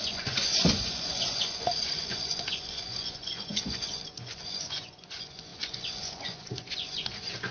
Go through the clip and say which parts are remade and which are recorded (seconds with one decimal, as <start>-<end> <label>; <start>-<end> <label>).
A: 0.0-7.5 remade